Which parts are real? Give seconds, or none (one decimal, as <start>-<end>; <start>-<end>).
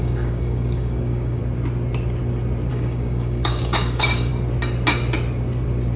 1.4-2.7; 4.3-6.0